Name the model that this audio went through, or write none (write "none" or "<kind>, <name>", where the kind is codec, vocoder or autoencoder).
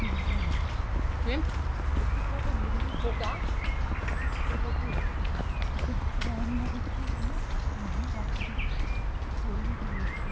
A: none